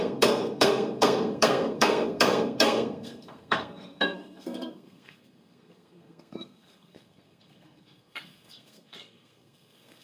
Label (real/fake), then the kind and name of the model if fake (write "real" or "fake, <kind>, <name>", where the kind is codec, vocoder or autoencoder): fake, codec, SNAC